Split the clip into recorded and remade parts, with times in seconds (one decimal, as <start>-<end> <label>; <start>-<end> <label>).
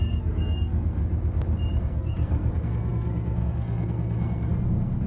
0.0-1.0 remade; 1.0-1.8 recorded; 1.8-5.1 remade